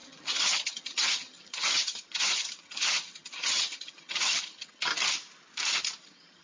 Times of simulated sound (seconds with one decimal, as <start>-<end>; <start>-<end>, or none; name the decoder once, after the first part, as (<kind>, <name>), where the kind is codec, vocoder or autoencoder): 0.0-4.9 (vocoder, HiFi-GAN); 6.0-6.4